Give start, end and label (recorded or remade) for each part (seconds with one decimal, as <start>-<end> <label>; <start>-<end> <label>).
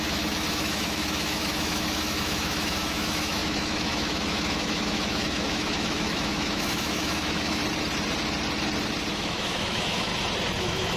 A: 0.0-7.6 remade; 7.6-9.1 recorded; 9.1-10.1 remade; 10.1-10.6 recorded; 10.6-11.0 remade